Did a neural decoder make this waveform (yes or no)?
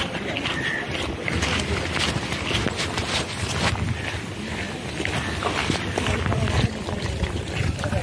no